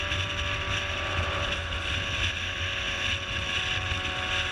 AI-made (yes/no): no